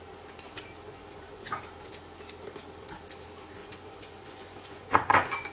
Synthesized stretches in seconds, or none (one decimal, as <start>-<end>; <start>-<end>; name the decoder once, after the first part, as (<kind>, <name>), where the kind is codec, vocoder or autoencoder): 0.9-1.6 (vocoder, Vocos); 3.6-5.5